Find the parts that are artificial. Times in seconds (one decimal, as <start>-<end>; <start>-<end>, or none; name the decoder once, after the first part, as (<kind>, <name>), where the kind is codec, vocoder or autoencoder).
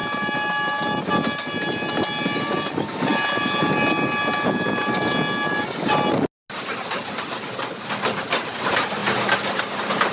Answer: none